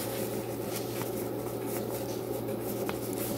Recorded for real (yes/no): yes